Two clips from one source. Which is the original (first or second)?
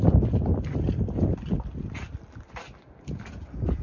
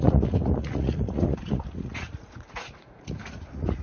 first